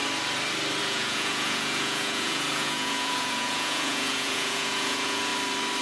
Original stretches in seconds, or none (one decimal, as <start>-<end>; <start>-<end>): 0.0-0.8; 5.3-5.8